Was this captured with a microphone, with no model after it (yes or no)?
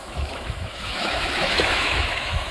no